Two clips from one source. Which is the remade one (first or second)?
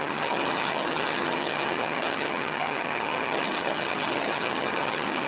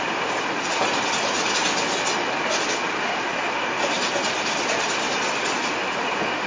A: first